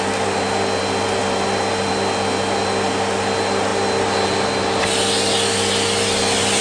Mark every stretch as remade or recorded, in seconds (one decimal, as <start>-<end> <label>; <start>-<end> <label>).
0.0-6.6 recorded